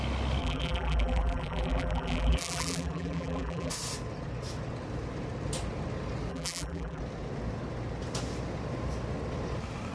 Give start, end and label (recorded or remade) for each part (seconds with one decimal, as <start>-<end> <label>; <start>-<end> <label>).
0.0-0.4 recorded; 0.4-3.7 remade; 3.7-6.3 recorded; 6.3-7.0 remade; 7.0-9.9 recorded